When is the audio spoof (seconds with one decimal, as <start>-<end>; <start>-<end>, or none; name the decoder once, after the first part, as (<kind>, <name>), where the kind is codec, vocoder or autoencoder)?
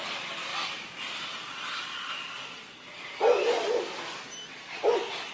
none